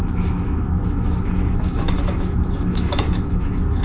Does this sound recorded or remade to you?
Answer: remade